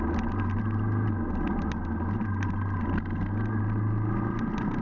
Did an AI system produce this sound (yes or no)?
no